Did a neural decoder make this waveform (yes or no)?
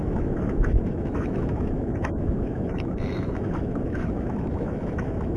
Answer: yes